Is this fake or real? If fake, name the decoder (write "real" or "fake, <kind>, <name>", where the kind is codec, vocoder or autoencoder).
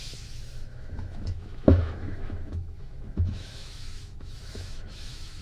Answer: fake, autoencoder, DAC-VAE